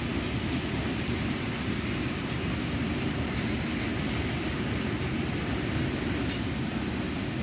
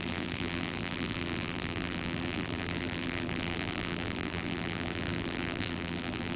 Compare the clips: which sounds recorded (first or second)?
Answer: first